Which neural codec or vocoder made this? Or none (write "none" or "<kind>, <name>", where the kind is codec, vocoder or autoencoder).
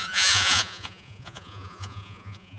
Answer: vocoder, Vocos